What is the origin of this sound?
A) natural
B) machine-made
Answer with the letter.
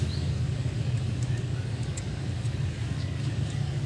B